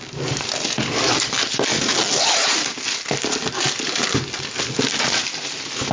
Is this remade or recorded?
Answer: recorded